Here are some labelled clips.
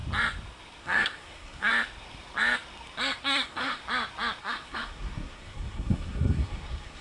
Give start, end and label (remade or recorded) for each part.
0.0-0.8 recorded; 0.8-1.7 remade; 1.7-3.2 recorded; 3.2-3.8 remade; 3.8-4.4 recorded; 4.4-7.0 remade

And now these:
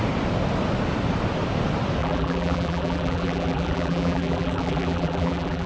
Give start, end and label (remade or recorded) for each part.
0.0-2.0 recorded; 2.0-5.7 remade